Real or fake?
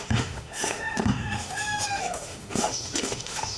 fake